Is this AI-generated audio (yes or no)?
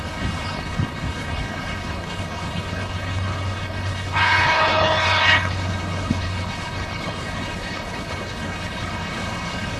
yes